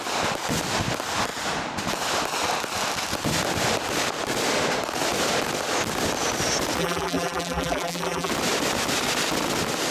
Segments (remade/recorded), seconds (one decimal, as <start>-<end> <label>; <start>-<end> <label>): 0.0-6.8 recorded; 6.8-8.3 remade; 8.3-9.9 recorded